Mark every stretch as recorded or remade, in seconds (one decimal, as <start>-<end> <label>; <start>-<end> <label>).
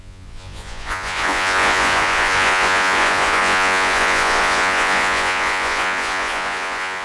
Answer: 0.0-7.0 remade